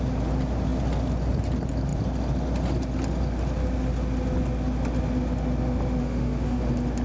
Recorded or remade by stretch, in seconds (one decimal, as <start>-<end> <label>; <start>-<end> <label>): 0.0-6.0 recorded; 6.0-6.6 remade; 6.6-7.0 recorded